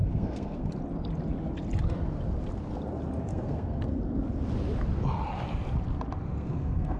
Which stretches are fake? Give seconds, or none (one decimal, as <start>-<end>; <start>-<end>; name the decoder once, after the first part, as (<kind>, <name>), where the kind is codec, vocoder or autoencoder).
0.0-0.7 (codec, SNAC); 3.3-4.0; 6.4-7.0